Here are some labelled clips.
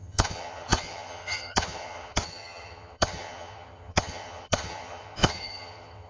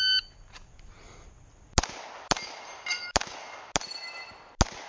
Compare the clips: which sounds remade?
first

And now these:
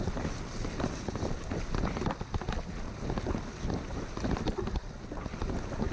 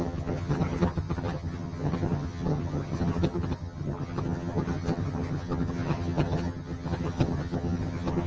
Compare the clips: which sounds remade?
second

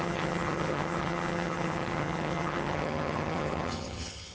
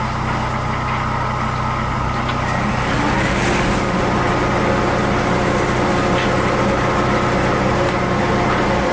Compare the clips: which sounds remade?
first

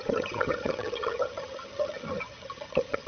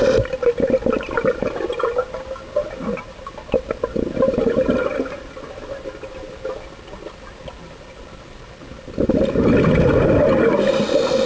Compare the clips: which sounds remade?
first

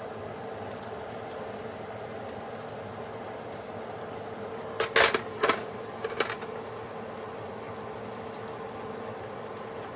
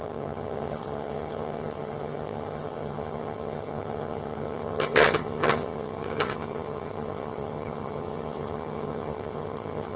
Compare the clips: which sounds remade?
second